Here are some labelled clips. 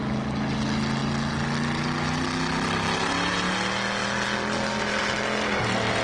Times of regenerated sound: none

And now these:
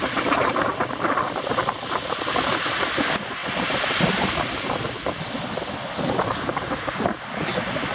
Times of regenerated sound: none